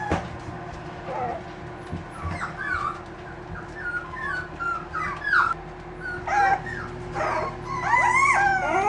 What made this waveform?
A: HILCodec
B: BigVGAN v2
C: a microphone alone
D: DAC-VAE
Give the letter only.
C